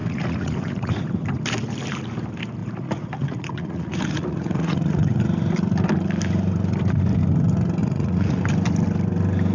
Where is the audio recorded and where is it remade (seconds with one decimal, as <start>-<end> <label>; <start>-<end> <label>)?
0.0-0.9 remade; 0.9-2.6 recorded; 2.6-5.2 remade; 5.2-7.8 recorded; 7.8-8.4 remade; 8.4-9.5 recorded